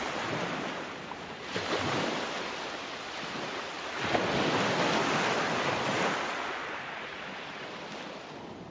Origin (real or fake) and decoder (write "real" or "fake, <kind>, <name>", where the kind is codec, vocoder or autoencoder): real